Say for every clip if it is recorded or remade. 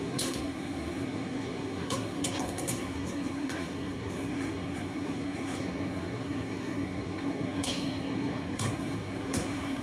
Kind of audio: remade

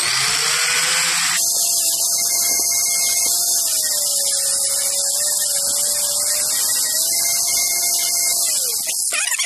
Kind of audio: recorded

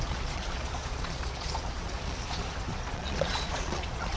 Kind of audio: remade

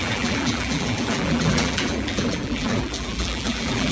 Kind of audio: remade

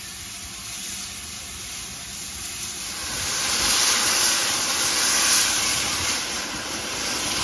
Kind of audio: recorded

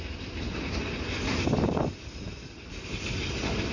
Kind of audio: recorded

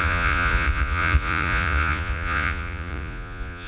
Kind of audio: remade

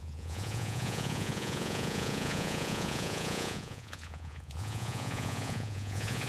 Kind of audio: remade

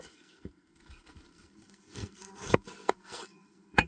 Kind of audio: remade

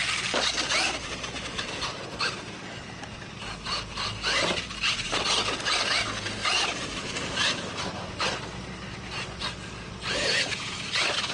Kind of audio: recorded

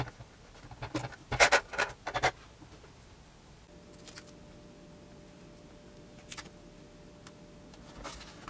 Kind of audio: recorded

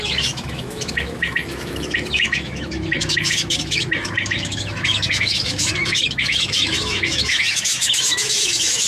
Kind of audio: remade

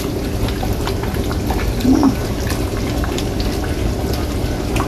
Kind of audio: recorded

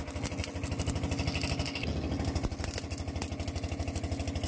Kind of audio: recorded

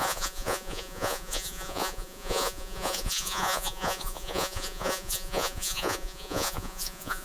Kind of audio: remade